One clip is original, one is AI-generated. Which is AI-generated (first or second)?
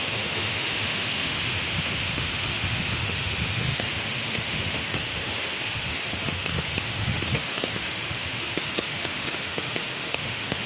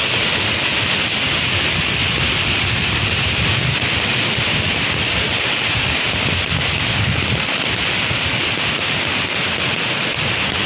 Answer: first